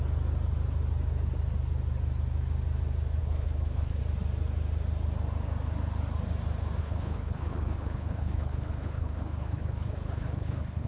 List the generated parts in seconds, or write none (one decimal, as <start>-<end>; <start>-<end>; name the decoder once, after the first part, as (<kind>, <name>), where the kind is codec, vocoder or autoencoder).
3.2-4.0 (codec, HILCodec); 6.8-10.9